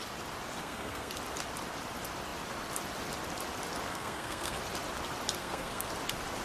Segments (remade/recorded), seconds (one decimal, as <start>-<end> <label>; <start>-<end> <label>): 0.0-0.6 recorded; 0.6-1.1 remade; 1.1-3.9 recorded; 3.9-4.6 remade; 4.6-5.4 recorded; 5.4-5.9 remade; 5.9-6.4 recorded